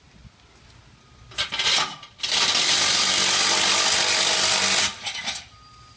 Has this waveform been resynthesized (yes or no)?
no